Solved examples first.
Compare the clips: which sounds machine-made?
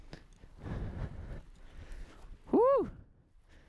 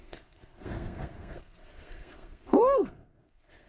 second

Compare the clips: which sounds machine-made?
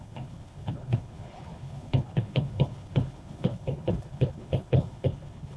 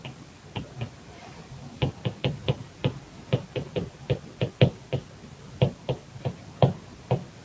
first